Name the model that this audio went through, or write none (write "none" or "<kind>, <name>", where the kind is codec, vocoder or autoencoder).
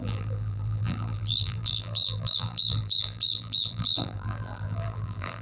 vocoder, BigVGAN v2